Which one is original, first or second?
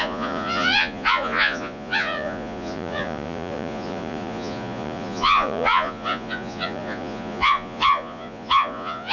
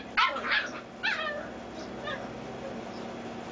second